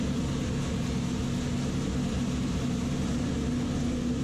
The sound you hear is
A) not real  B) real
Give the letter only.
B